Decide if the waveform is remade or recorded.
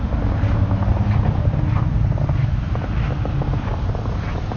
recorded